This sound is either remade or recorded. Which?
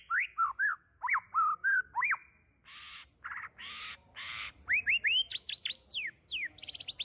recorded